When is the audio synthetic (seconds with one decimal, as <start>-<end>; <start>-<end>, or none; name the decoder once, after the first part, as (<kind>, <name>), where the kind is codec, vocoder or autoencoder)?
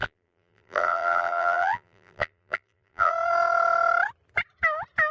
0.0-3.1 (vocoder, BigVGAN v2)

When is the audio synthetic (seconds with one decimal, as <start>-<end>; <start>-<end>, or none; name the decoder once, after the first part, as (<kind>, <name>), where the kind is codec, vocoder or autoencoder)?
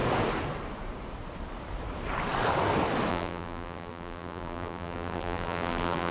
3.1-6.1 (vocoder, BigVGAN v2)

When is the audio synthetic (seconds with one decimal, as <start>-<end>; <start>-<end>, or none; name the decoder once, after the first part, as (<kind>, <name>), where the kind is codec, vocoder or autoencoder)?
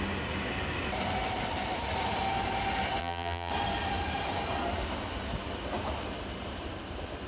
3.0-3.5 (vocoder, BigVGAN v2)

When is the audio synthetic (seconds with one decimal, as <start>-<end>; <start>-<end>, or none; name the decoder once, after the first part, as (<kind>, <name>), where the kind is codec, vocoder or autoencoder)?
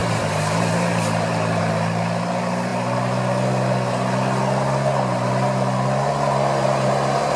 0.0-1.6 (vocoder, BigVGAN v2)